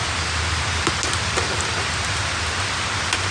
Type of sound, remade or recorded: recorded